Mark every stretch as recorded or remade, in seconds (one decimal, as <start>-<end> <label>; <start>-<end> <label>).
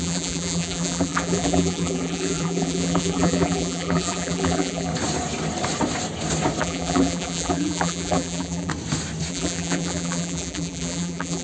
0.0-4.9 remade; 4.9-6.6 recorded; 6.6-8.7 remade; 8.7-9.3 recorded; 9.3-11.4 remade